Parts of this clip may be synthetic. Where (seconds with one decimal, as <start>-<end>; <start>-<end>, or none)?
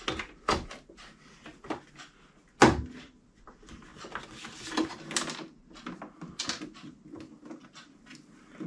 none